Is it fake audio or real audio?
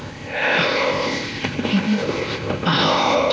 fake